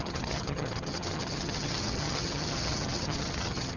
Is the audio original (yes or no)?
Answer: no